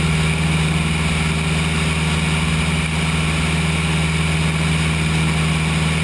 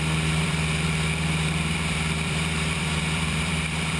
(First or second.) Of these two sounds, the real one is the first